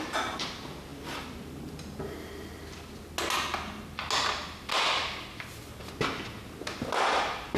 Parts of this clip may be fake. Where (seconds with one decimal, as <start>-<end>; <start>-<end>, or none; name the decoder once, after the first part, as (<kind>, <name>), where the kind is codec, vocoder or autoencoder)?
none